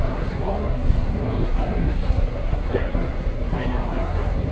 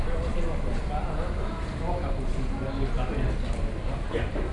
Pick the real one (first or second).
second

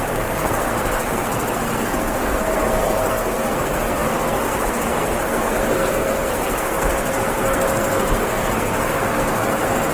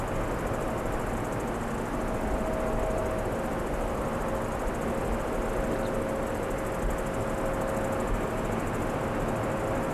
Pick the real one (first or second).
second